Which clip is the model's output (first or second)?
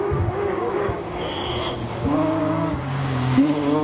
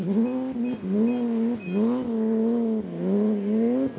first